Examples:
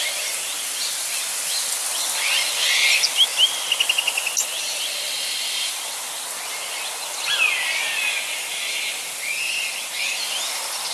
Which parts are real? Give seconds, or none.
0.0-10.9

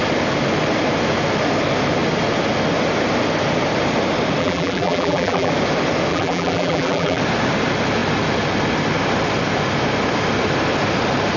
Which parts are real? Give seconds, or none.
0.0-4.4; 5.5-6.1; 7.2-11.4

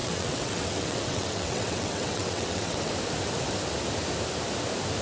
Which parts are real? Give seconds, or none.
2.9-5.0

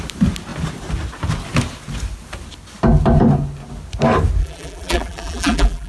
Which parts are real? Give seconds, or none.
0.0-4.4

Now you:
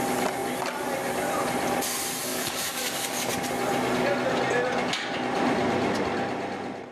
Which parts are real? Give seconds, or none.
0.0-2.3; 3.3-6.9

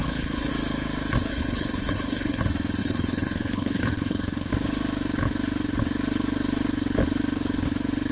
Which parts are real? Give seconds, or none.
0.5-1.3; 2.4-2.8; 4.5-8.1

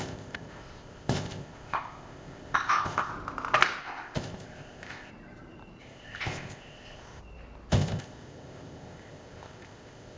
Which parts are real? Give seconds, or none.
3.1-3.8; 5.1-5.8; 7.2-7.7

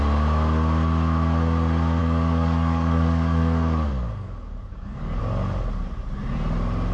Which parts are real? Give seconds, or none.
0.0-2.0; 5.2-6.9